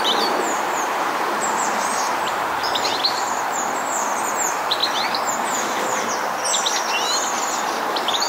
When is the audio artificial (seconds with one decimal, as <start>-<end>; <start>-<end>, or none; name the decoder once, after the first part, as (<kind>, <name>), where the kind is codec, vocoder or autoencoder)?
0.0-2.9 (vocoder, BigVGAN v2); 4.3-4.8; 7.6-8.3

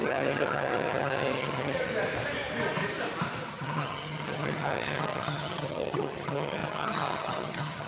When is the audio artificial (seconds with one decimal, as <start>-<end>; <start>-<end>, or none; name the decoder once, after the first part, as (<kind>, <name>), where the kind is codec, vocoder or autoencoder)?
0.0-1.9 (vocoder, HiFi-GAN); 3.5-7.9

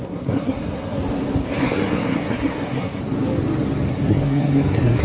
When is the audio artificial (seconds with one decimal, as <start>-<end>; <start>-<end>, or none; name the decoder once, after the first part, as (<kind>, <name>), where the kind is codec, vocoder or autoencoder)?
0.0-1.0 (codec, SNAC); 1.6-3.0; 3.9-5.0

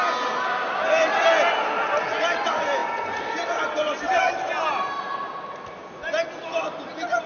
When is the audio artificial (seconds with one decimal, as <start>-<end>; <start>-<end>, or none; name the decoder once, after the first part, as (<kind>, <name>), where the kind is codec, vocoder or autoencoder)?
none